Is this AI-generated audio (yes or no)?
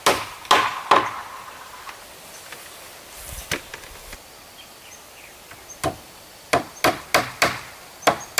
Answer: no